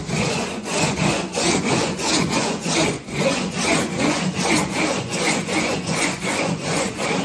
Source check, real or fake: fake